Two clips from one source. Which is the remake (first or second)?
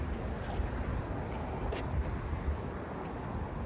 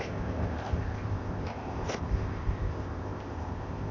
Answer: second